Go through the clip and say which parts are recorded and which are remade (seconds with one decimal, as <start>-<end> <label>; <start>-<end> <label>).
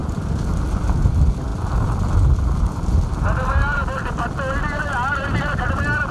0.0-6.1 recorded